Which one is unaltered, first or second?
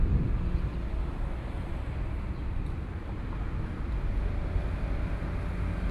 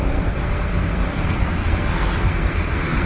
first